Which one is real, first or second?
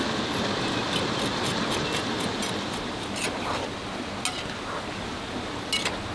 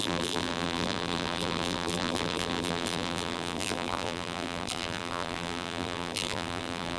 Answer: first